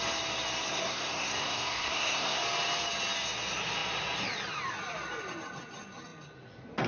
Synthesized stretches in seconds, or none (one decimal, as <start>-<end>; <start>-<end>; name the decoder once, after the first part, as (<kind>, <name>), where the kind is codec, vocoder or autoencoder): 0.7-2.4 (codec, SNAC)